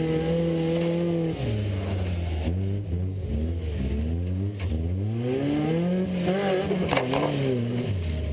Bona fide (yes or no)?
yes